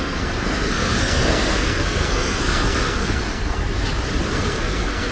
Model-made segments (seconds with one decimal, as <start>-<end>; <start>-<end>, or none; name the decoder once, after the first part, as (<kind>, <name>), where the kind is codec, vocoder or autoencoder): 0.0-3.6 (codec, SNAC); 4.3-5.1

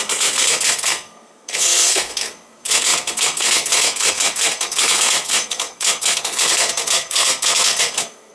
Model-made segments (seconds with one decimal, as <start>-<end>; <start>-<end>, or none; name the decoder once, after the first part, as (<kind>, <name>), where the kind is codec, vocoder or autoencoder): 0.0-8.3 (codec, SNAC)

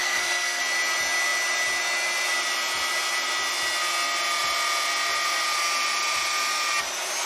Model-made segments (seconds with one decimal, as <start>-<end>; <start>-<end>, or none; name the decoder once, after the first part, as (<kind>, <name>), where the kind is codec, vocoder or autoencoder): 0.0-0.6 (codec, SNAC)

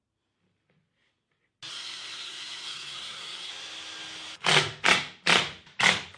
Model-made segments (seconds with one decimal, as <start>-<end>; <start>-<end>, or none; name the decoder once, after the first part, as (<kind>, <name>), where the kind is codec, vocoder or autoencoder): 1.7-3.5 (codec, SNAC)

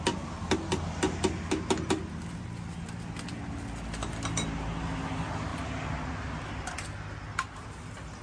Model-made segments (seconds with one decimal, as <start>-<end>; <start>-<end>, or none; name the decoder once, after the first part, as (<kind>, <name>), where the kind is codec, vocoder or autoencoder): none